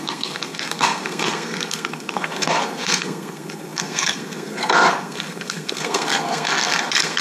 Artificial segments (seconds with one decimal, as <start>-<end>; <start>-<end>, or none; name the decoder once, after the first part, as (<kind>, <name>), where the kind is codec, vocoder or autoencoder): 0.0-7.2 (codec, SNAC)